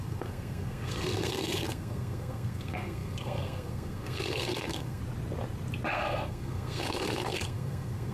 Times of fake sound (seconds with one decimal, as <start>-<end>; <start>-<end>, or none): 0.0-5.0; 5.9-8.1